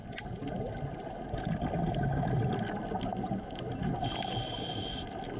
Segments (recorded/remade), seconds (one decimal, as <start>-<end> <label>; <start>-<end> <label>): 0.0-5.4 recorded